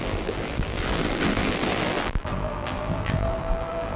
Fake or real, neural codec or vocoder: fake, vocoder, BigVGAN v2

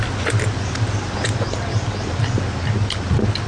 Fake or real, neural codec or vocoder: real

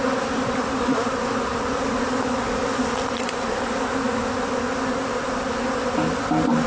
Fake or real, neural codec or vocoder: real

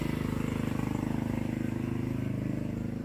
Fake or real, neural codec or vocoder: real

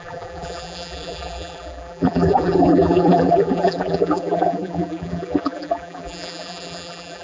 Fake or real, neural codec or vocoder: fake, vocoder, BigVGAN v2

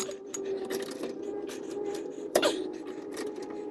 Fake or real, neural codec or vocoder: fake, vocoder, BigVGAN v2